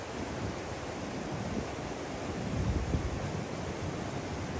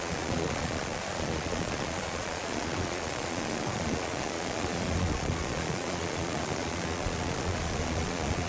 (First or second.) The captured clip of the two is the first